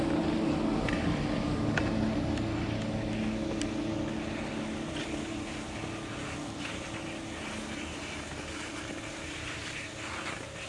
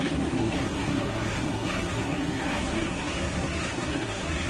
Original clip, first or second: first